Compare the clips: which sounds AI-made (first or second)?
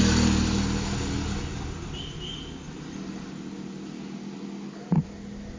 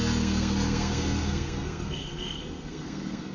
second